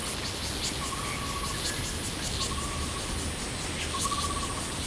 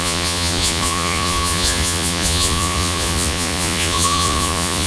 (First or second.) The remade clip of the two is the second